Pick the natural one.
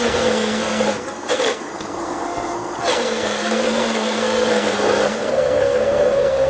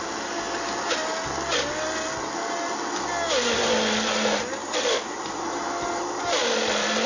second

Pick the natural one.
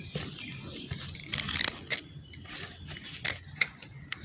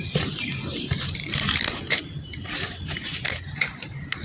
first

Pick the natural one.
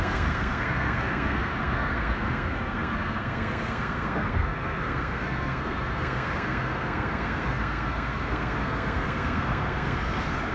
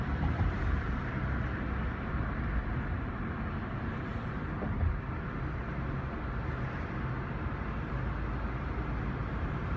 second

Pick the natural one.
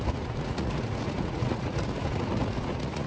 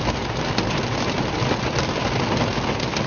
second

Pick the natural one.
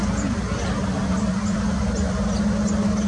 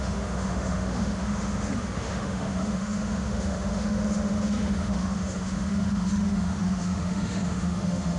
first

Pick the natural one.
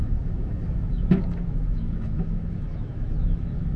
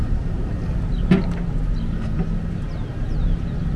second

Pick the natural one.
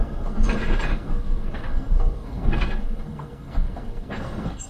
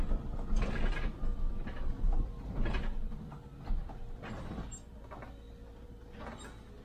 second